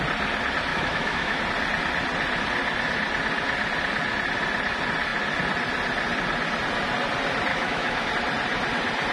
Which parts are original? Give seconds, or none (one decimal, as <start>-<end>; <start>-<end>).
0.0-0.7; 1.4-7.5; 8.1-9.1